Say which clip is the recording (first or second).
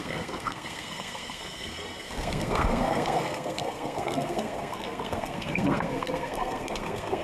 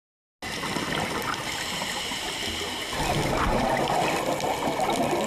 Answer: second